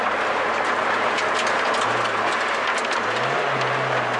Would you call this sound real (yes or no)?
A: yes